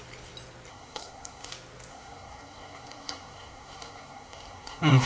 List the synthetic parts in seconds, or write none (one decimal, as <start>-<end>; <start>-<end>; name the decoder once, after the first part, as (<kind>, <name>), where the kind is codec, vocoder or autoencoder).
0.7-1.5 (codec, SNAC); 1.9-5.1